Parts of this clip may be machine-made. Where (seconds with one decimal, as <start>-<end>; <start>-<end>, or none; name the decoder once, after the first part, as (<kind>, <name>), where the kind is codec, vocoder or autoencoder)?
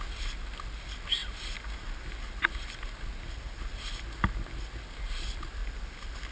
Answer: none